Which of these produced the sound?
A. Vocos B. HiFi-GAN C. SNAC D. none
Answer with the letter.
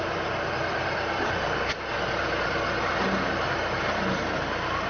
D